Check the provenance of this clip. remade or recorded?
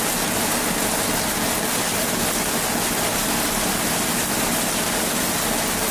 recorded